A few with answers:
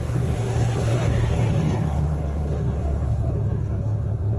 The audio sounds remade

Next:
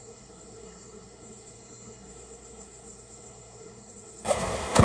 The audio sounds remade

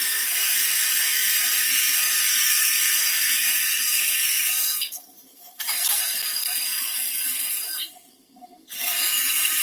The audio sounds remade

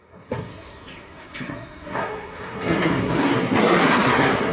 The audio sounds remade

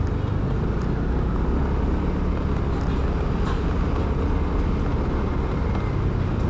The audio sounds recorded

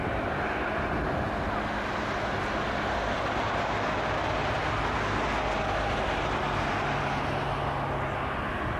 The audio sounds recorded